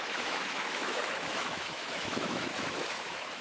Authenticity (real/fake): fake